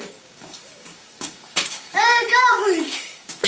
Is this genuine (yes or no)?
no